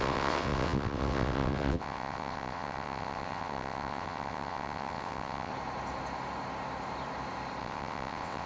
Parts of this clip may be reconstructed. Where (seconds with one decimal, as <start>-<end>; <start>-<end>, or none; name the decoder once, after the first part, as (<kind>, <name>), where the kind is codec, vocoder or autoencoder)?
0.0-5.5 (vocoder, WaveNeXt); 7.6-8.5